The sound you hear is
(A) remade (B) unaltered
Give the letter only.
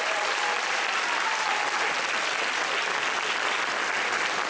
B